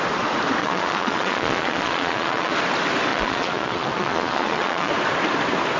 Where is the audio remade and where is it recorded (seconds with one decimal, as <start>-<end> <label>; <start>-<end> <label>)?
0.0-0.6 recorded; 0.6-2.6 remade; 2.6-3.1 recorded; 3.1-4.9 remade; 4.9-5.8 recorded